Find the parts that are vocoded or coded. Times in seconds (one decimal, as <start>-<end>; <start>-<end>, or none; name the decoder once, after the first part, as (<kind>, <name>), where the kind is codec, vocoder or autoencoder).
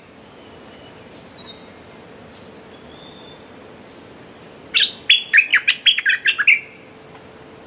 none